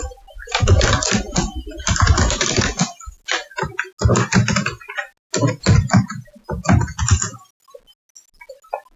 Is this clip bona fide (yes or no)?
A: yes